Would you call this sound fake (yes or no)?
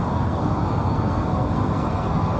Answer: yes